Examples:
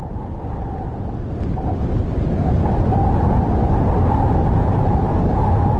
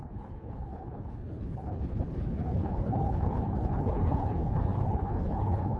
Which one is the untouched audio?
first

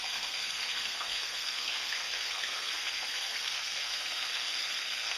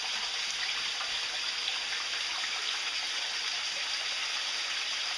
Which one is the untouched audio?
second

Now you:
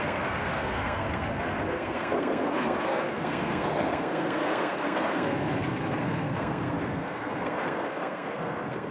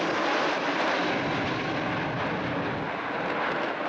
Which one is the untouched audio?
second